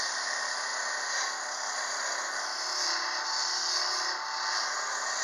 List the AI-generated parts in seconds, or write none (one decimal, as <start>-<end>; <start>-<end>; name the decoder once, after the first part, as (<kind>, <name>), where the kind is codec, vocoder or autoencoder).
none